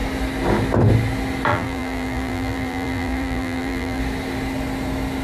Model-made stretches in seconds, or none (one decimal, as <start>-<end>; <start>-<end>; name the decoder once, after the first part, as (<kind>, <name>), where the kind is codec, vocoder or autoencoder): 1.5-4.0 (vocoder, BigVGAN v2)